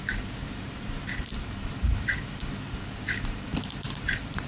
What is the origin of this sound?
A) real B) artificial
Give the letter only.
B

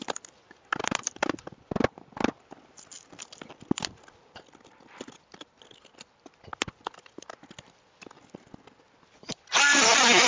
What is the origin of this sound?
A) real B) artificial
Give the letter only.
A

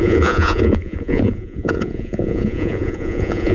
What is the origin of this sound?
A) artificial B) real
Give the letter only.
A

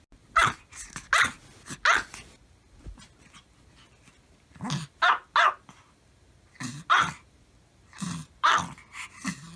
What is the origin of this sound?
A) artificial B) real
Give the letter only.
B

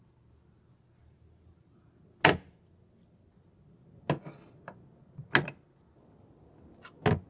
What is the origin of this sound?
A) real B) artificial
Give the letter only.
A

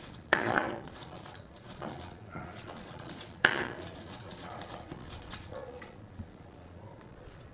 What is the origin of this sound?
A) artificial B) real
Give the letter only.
A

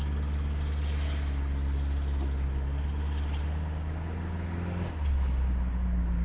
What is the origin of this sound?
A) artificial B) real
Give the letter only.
B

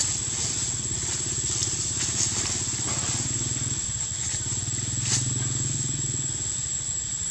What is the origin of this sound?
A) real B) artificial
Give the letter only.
A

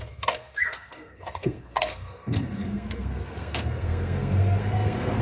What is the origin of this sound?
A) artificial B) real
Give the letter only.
A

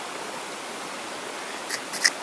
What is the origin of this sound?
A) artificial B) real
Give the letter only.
B